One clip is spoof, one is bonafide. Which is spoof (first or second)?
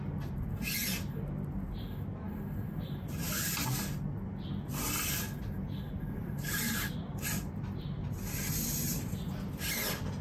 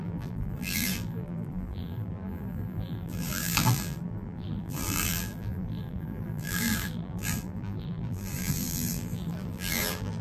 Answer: second